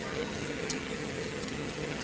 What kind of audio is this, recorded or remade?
remade